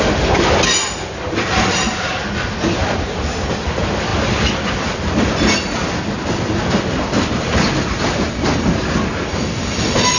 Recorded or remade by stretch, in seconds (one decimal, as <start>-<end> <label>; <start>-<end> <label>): 0.0-10.2 recorded